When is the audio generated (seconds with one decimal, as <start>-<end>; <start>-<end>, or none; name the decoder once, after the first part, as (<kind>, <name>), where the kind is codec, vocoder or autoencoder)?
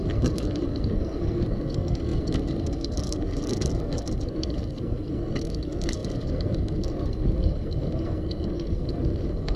0.0-9.6 (codec, SNAC)